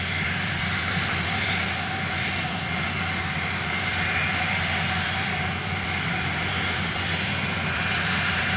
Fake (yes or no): yes